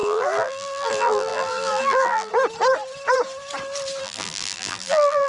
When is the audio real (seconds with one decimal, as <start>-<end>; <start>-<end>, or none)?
2.3-4.0